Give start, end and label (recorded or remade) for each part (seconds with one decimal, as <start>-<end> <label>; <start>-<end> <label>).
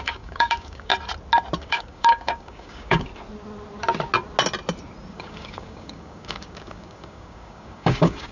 0.0-0.9 remade; 0.9-1.6 recorded; 1.6-3.1 remade; 3.1-5.1 recorded; 5.1-8.3 remade